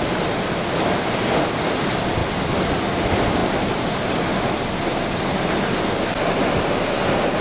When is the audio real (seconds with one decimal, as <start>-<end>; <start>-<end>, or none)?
0.0-2.2; 2.8-3.4; 4.1-4.9; 5.7-7.4